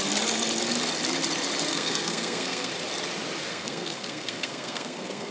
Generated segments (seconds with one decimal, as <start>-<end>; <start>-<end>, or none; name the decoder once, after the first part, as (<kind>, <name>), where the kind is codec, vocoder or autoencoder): 1.7-2.7 (codec, SNAC); 3.5-5.3